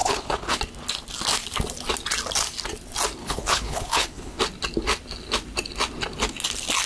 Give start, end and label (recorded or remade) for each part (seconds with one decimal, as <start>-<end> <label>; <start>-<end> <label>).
0.0-0.6 remade; 0.6-3.2 recorded; 3.2-4.4 remade; 4.4-6.9 recorded